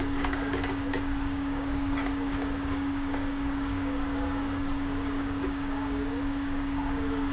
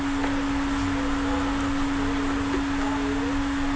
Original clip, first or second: second